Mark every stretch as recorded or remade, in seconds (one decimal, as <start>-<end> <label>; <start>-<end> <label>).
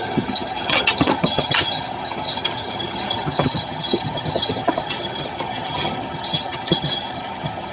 0.0-7.7 remade